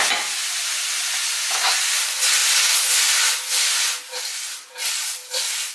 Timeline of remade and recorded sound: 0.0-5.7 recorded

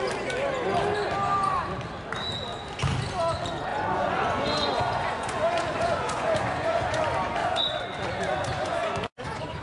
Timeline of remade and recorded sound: 0.0-3.7 recorded; 3.7-7.0 remade; 7.0-7.4 recorded; 7.4-9.1 remade; 9.1-9.6 recorded

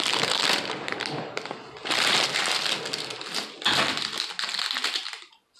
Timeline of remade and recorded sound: 0.0-5.6 recorded

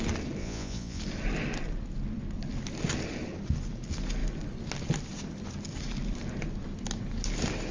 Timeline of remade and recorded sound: 0.0-0.4 recorded; 0.4-1.0 remade; 1.0-7.7 recorded

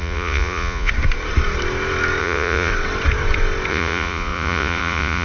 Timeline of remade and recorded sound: 0.0-0.9 remade; 0.9-2.2 recorded; 2.2-2.7 remade; 2.7-3.7 recorded; 3.7-5.2 remade

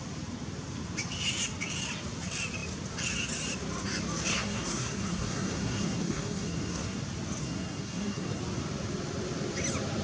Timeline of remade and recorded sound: 0.0-4.3 recorded; 4.3-7.0 remade; 7.0-7.4 recorded; 7.4-8.4 remade; 8.4-10.0 recorded

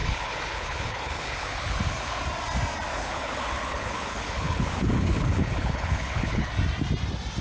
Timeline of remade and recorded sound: 0.0-2.2 remade; 2.2-2.9 recorded; 2.9-6.5 remade; 6.5-7.4 recorded